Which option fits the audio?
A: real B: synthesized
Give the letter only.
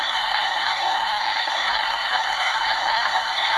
B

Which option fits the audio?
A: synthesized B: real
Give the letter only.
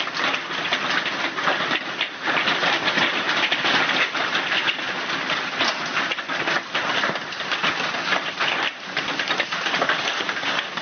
B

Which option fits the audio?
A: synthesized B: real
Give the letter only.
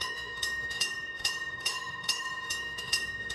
A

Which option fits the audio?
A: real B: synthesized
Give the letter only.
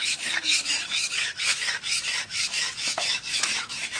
B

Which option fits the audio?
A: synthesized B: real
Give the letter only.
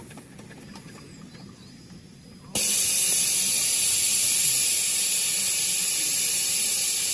B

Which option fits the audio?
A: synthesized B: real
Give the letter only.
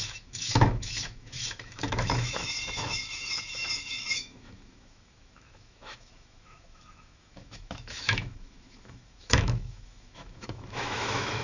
A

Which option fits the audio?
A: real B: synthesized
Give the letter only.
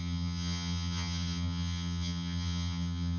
B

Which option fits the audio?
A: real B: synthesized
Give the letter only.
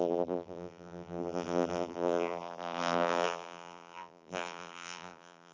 B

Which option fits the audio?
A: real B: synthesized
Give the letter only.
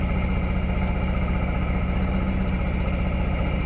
A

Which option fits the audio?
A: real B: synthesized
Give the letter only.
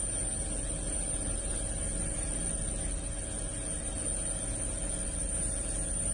A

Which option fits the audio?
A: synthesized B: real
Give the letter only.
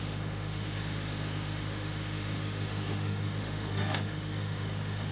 A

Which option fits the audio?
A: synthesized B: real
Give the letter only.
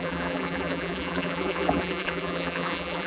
A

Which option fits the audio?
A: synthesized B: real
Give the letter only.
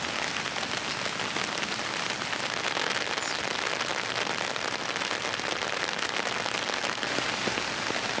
B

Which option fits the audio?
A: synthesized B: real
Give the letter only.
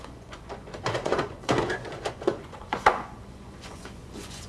A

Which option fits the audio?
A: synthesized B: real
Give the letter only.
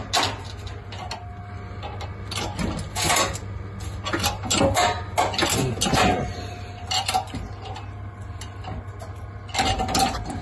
B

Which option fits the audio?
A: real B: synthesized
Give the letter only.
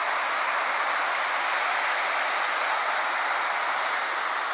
A